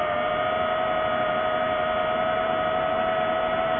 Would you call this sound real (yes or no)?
yes